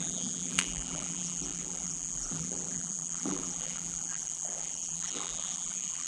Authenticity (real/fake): fake